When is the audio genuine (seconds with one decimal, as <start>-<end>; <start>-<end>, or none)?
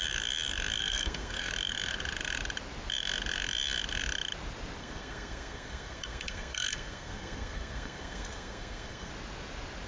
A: 0.0-0.8; 1.5-4.8; 9.1-9.9